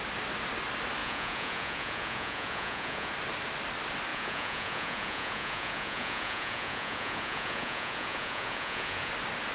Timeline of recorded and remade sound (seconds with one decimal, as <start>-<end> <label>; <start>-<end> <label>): 0.0-1.0 recorded; 1.0-3.1 remade; 3.1-4.1 recorded; 4.1-9.1 remade; 9.1-9.5 recorded